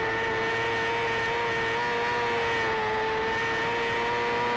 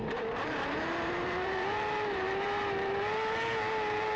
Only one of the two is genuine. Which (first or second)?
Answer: first